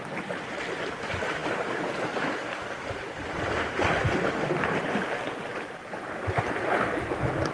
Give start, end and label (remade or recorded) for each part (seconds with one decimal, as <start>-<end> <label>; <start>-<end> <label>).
0.0-7.5 recorded